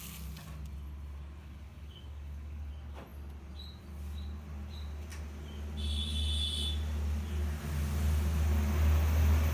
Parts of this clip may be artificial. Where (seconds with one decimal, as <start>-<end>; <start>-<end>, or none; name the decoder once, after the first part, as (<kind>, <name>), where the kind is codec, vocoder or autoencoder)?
1.4-2.7 (codec, DAC)